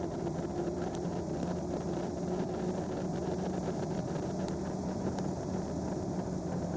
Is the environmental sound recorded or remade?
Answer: recorded